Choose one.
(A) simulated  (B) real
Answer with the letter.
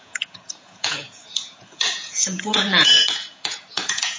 A